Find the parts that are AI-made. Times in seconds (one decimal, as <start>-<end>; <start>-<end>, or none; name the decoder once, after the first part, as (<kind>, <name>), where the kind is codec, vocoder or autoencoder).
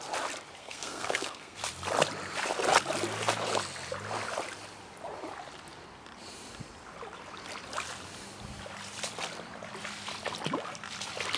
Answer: 0.6-1.6 (codec, SNAC)